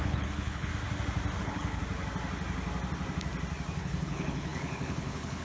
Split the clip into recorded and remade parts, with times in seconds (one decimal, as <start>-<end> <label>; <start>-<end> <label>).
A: 0.0-0.7 remade; 0.7-1.4 recorded; 1.4-1.8 remade; 1.8-3.8 recorded; 3.8-5.4 remade